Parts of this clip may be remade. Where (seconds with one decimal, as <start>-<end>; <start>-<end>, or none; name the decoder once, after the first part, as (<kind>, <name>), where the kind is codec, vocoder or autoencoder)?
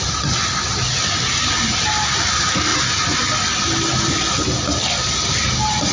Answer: none